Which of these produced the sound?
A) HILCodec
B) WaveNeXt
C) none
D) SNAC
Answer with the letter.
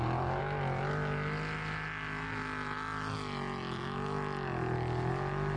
C